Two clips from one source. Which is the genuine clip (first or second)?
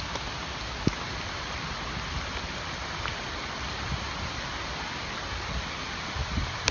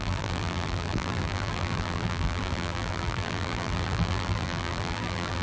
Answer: first